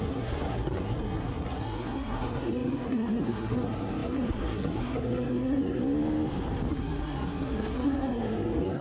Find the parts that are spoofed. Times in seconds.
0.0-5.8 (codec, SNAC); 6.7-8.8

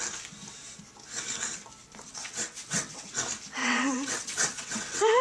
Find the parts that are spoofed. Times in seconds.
2.1-3.1 (vocoder, WaveNeXt); 3.6-5.2

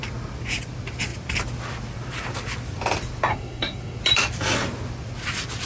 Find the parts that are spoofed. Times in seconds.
3.3-4.0 (codec, SNAC)

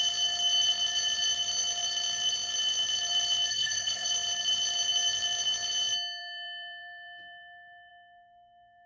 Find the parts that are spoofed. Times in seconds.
3.5-4.1 (codec, SNAC)

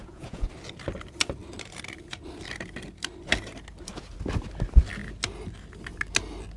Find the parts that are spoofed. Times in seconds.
0.0-0.5 (vocoder, Vocos)

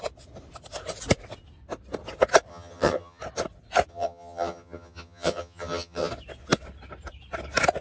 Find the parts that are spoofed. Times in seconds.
2.5-3.2 (vocoder, HiFi-GAN); 3.9-6.1